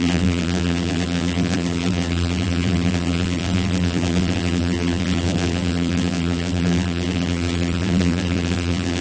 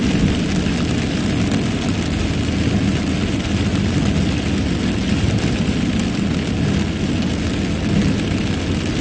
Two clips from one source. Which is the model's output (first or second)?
first